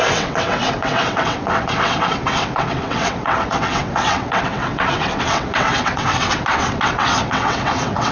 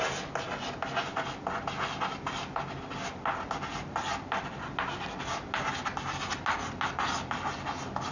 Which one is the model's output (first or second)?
first